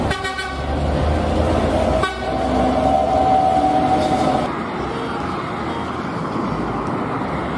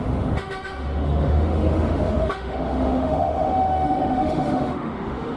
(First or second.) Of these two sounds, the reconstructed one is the second